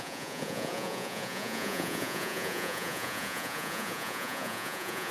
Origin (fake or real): fake